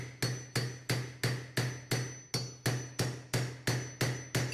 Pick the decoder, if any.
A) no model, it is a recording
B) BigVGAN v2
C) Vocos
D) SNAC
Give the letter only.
A